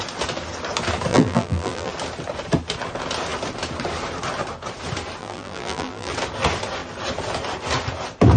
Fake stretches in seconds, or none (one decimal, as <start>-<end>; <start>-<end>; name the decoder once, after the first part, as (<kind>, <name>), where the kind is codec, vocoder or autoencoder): 1.1-1.9 (vocoder, BigVGAN v2); 5.2-6.1